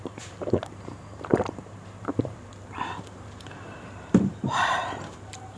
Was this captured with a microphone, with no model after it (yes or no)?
no